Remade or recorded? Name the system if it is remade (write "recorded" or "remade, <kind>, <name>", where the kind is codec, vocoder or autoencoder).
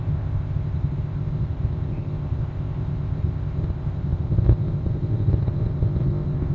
remade, codec, ZipCodec